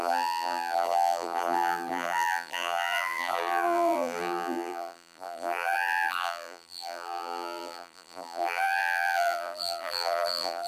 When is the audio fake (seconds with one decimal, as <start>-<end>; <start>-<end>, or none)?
0.0-10.7